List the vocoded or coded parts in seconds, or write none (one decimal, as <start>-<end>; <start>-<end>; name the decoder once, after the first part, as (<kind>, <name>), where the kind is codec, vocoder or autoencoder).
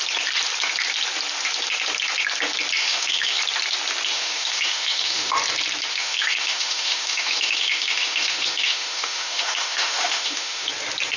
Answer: 2.8-3.4 (autoencoder, DAC-VAE); 4.1-5.3; 5.9-10.7